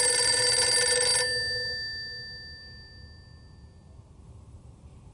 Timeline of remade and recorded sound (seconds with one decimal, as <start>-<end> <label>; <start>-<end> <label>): 0.0-1.1 remade; 1.1-4.2 recorded; 4.2-5.1 remade